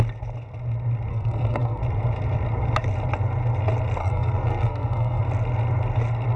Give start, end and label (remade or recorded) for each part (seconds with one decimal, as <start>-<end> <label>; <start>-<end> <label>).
0.0-1.1 recorded; 1.1-1.8 remade; 1.8-4.0 recorded; 4.0-5.2 remade; 5.2-6.4 recorded